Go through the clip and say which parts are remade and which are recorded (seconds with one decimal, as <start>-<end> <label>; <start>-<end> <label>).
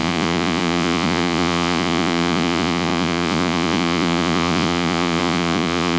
0.0-6.0 remade